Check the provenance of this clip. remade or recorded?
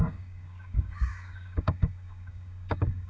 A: remade